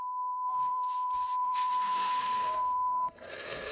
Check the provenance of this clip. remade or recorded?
remade